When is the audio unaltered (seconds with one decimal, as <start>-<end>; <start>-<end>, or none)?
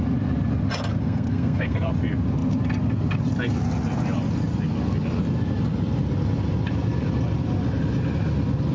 0.0-0.9; 1.9-8.7